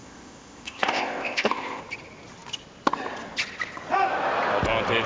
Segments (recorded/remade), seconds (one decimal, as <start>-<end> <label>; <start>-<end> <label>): 0.0-1.8 remade; 1.8-5.1 recorded